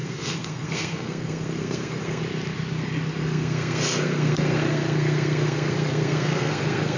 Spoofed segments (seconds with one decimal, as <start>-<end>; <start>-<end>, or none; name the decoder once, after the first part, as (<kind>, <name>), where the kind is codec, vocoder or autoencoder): 0.0-2.2 (codec, SNAC); 3.2-7.0